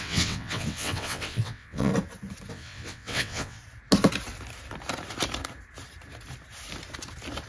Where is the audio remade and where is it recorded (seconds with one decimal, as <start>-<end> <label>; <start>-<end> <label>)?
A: 0.0-1.9 remade; 1.9-2.5 recorded; 2.5-3.6 remade; 3.6-7.5 recorded